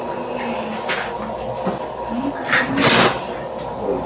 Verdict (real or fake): real